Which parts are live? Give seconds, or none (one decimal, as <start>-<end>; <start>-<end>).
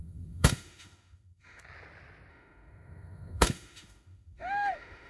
1.6-2.3